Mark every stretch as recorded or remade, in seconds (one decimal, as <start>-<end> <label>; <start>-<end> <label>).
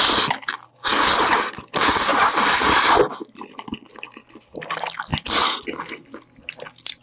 0.0-7.0 recorded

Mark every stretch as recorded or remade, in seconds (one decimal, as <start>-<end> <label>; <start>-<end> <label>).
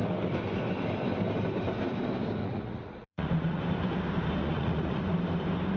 0.0-2.4 recorded; 2.4-3.6 remade; 3.6-4.4 recorded; 4.4-5.0 remade; 5.0-5.8 recorded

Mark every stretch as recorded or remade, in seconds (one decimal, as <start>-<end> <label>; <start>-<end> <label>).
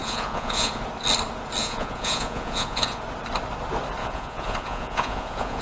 0.0-0.8 remade; 0.8-1.6 recorded; 1.6-3.0 remade; 3.0-4.0 recorded; 4.0-5.6 remade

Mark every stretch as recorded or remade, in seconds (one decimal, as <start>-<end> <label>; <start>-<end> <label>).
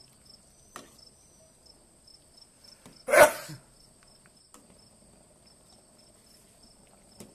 0.0-7.3 recorded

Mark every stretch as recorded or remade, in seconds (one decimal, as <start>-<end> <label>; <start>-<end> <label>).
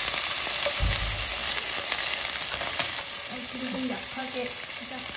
0.0-5.2 recorded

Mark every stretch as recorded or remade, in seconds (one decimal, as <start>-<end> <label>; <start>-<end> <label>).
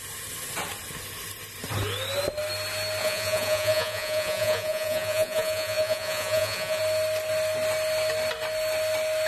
0.0-3.0 recorded; 3.0-6.8 remade; 6.8-9.3 recorded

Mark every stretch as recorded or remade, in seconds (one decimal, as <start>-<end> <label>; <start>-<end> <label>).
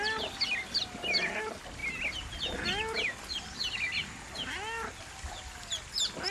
0.0-6.3 recorded